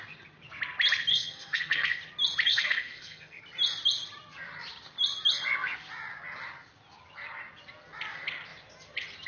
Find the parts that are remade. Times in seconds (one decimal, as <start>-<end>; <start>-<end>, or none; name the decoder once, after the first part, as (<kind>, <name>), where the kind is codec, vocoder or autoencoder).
1.1-2.0 (codec, SNAC); 2.5-3.4